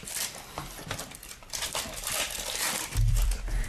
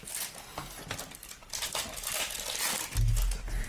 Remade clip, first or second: first